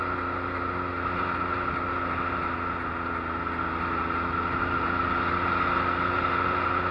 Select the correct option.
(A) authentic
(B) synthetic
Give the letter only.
A